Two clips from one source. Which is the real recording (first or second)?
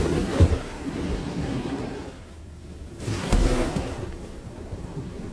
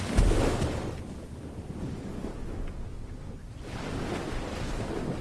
second